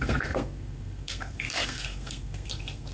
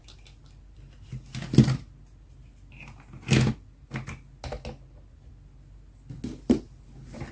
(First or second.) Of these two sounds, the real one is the second